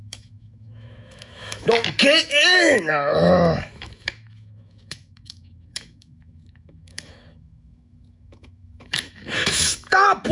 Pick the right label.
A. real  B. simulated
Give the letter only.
B